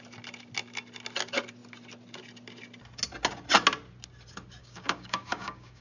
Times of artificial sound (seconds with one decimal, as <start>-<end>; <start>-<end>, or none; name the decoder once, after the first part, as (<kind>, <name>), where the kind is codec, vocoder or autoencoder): 4.6-5.8 (codec, DAC)